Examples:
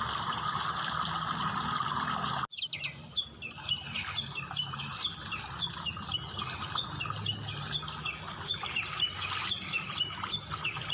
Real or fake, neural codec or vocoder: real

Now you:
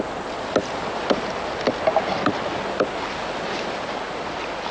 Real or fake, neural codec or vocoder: real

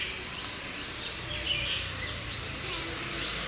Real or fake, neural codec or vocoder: real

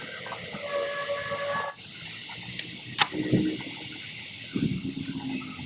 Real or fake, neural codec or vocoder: real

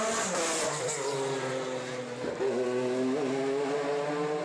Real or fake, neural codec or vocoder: real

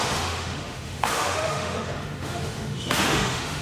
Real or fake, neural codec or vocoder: fake, autoencoder, DAC-VAE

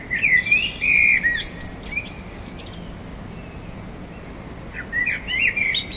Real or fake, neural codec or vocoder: real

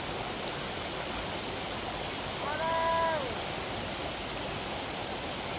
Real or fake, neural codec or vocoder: real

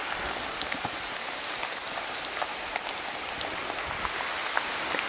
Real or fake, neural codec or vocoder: real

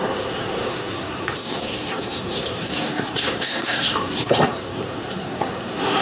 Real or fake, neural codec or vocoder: fake, codec, SNAC